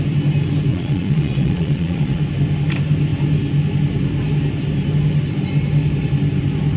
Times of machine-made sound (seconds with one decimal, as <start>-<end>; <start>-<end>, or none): 0.7-2.2